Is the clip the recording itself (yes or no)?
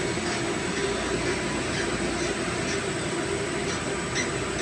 yes